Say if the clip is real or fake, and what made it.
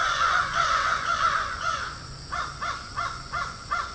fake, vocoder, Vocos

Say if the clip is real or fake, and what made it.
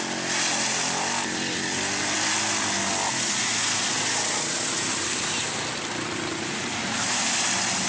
real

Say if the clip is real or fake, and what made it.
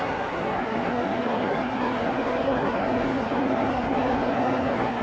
fake, codec, SNAC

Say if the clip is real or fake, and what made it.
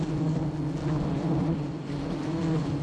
real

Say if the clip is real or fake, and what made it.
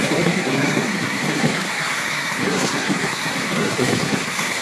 fake, codec, SNAC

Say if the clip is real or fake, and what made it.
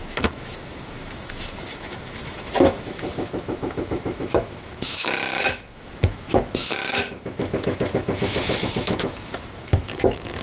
fake, autoencoder, DAC-VAE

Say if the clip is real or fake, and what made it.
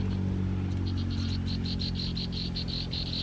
real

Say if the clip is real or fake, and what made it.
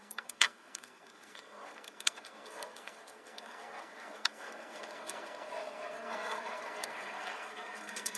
fake, codec, SNAC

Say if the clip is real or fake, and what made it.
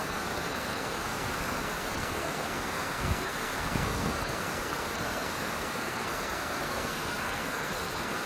fake, codec, SNAC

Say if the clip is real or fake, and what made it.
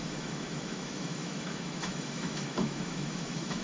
fake, autoencoder, DAC-VAE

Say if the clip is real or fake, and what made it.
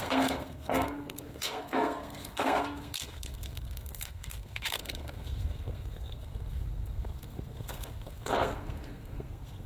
fake, codec, SNAC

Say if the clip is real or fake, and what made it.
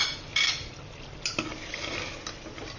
real